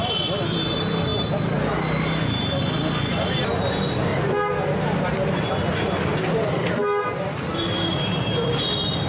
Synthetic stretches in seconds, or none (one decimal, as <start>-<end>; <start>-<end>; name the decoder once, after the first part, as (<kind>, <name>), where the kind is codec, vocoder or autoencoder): none